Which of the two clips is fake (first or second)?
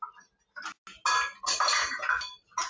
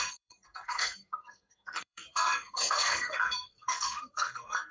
second